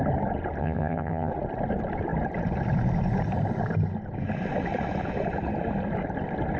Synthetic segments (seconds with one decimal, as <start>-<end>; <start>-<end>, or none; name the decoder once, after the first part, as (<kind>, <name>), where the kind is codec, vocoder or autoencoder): 0.6-1.3 (vocoder, HiFi-GAN)